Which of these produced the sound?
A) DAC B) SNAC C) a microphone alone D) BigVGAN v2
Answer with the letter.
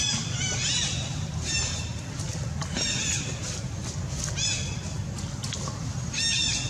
C